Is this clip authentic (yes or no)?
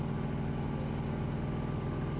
yes